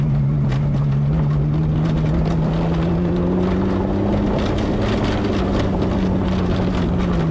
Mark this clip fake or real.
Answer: real